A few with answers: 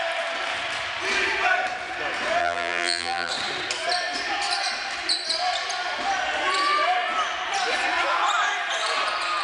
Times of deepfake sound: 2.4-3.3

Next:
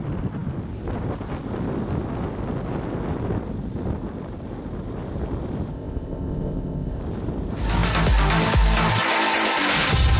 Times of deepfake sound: 5.7-7.0

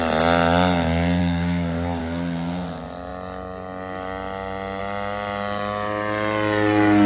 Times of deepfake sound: 1.2-2.0

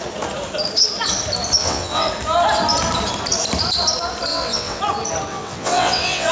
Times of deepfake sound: 1.6-2.1; 4.3-4.8; 5.3-6.3